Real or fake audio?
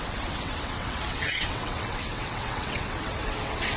fake